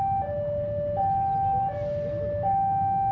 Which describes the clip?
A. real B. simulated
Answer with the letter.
A